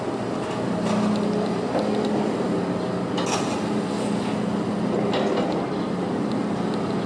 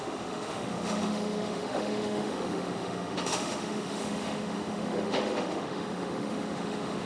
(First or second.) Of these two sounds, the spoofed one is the second